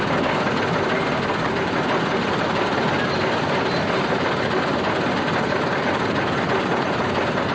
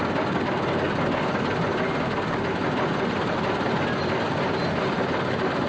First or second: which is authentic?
second